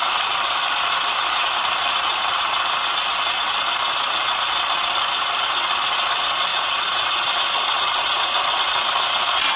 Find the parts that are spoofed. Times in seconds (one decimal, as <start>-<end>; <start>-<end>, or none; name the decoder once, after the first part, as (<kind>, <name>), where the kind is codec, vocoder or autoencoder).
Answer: 6.5-8.4 (vocoder, Vocos)